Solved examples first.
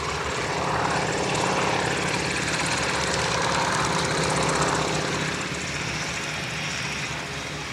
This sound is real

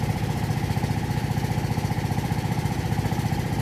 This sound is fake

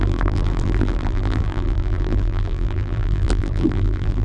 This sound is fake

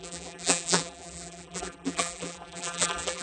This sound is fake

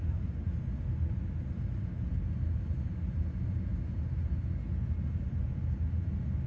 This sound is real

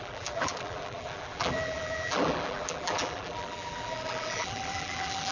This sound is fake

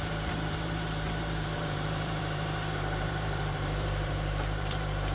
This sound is fake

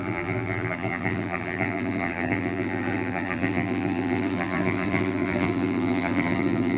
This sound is fake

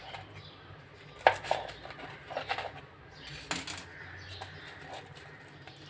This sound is real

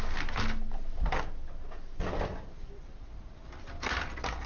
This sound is real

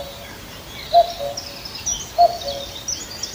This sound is real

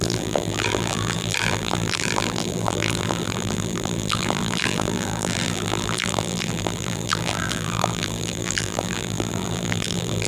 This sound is fake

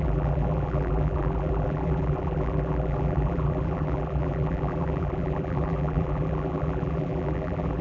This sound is fake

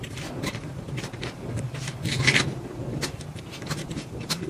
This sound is fake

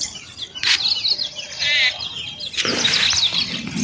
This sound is real